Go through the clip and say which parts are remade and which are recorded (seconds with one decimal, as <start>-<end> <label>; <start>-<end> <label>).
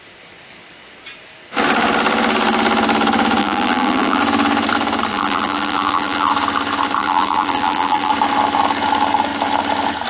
0.0-3.4 recorded; 3.4-4.2 remade; 4.2-5.1 recorded; 5.1-6.3 remade; 6.3-7.0 recorded; 7.0-8.1 remade; 8.1-10.1 recorded